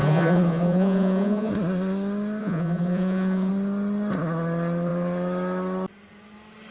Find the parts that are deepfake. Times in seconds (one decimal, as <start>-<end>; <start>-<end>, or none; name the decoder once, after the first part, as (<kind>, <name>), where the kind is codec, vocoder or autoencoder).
0.0-1.5 (vocoder, Vocos); 2.4-3.5